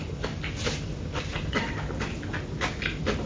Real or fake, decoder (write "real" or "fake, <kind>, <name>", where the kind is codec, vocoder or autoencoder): real